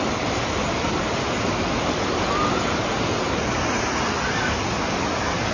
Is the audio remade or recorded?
recorded